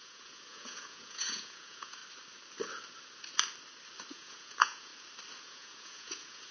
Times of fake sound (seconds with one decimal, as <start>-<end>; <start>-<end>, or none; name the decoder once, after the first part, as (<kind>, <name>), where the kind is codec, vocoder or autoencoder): 0.0-2.0 (vocoder, Vocos); 4.1-4.9; 5.4-6.5